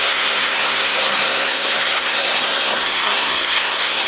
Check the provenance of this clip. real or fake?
fake